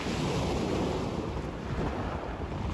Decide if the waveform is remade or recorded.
recorded